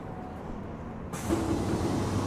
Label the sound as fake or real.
real